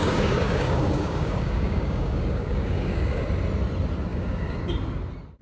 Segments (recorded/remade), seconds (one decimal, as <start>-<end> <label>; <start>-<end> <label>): 0.0-3.2 remade; 3.2-4.1 recorded; 4.1-4.6 remade; 4.6-5.4 recorded